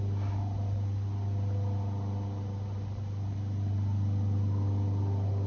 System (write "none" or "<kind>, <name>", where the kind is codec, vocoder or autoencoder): none